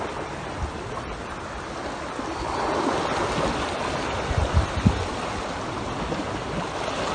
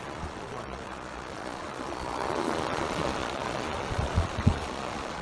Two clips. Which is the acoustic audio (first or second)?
first